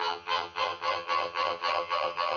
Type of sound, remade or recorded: remade